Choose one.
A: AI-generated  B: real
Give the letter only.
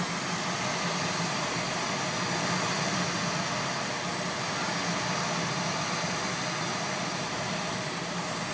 B